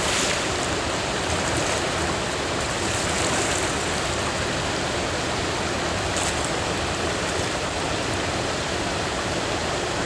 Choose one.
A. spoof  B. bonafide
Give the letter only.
B